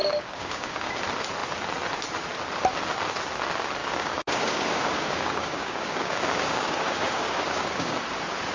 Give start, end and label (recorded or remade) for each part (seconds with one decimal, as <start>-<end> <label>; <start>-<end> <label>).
0.0-0.9 remade; 0.9-3.8 recorded; 3.8-8.0 remade; 8.0-8.5 recorded